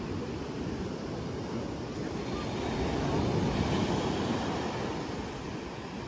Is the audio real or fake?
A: real